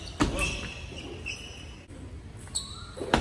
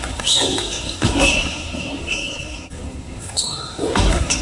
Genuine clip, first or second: first